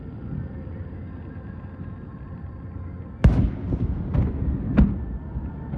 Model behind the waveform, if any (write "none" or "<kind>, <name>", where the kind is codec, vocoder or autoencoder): none